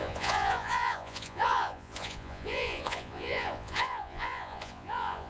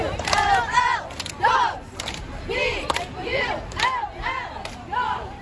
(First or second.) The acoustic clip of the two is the second